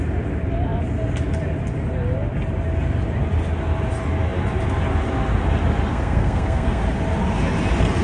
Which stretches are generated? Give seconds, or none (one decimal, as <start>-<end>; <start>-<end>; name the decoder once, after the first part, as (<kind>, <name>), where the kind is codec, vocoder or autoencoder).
5.9-6.8 (codec, SNAC)